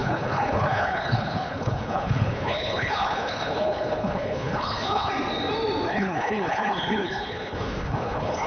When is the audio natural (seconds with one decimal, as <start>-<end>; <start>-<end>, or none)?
5.1-5.9